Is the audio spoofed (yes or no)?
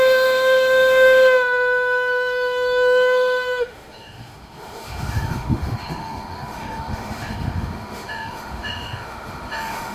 yes